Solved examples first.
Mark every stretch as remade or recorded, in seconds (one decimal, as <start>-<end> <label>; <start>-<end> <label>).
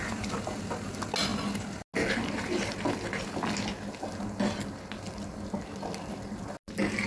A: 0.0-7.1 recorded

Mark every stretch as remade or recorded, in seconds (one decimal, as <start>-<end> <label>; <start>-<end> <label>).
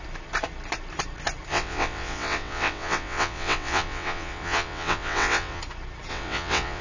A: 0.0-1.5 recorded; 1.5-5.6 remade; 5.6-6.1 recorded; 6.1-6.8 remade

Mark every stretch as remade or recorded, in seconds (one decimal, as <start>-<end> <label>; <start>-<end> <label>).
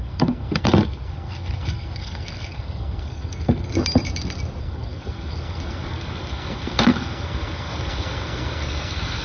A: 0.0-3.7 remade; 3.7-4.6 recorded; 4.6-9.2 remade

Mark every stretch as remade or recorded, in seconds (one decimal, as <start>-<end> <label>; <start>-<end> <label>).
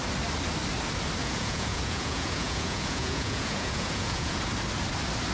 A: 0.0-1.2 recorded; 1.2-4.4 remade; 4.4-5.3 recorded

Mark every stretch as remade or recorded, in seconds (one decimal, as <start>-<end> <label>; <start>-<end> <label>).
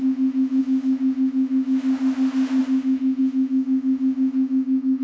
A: 0.0-5.0 remade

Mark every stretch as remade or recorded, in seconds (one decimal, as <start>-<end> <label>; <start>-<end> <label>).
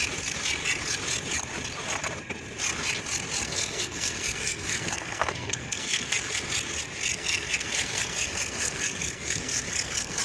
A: 0.0-3.4 recorded; 3.4-6.4 remade; 6.4-7.1 recorded; 7.1-10.2 remade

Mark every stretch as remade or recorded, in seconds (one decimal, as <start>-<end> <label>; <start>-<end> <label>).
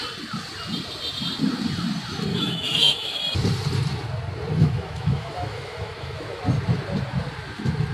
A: 0.0-2.3 recorded; 2.3-3.2 remade; 3.2-4.6 recorded; 4.6-6.4 remade; 6.4-7.9 recorded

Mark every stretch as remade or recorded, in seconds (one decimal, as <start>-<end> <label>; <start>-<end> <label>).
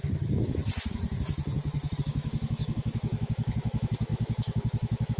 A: 0.0-0.6 remade; 0.6-2.0 recorded; 2.0-5.2 remade